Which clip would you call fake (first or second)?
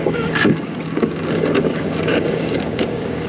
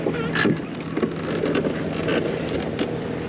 first